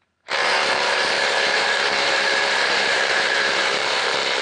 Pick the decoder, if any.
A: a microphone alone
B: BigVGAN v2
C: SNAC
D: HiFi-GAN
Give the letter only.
B